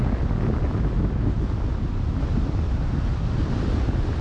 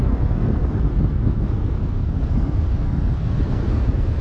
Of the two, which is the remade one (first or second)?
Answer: second